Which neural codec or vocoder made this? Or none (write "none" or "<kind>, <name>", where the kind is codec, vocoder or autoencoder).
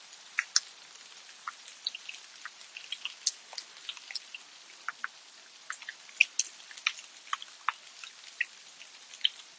none